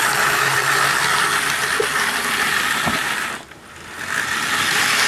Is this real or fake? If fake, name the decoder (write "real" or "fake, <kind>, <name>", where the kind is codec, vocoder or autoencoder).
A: real